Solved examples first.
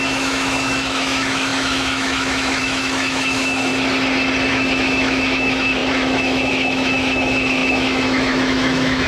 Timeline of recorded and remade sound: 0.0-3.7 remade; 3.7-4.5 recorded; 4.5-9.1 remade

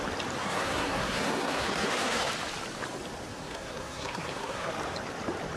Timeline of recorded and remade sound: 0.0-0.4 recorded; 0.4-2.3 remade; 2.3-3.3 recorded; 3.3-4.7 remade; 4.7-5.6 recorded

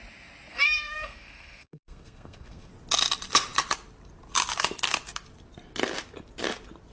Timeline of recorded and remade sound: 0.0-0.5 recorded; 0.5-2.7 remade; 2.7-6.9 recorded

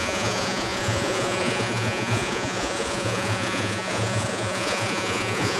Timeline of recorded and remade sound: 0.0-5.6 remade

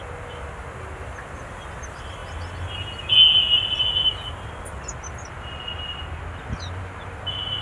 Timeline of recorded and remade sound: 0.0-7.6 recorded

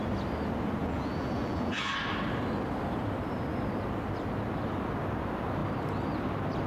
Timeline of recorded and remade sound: 0.0-0.8 recorded; 0.8-1.9 remade; 1.9-6.7 recorded

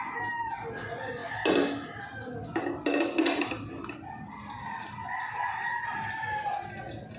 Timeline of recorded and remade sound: 0.0-7.2 recorded

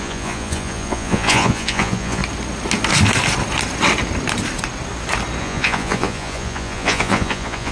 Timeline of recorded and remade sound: 0.0-2.2 remade; 2.2-5.4 recorded; 5.4-7.7 remade